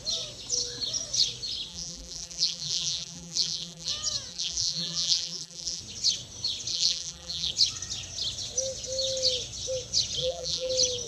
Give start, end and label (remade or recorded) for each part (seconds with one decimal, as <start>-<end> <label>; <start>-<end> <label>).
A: 0.0-1.7 recorded; 1.7-3.9 remade; 3.9-4.3 recorded; 4.3-5.8 remade; 5.8-6.7 recorded; 6.7-7.5 remade; 7.5-10.2 recorded; 10.2-10.7 remade; 10.7-11.1 recorded